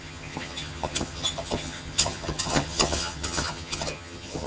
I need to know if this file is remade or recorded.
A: remade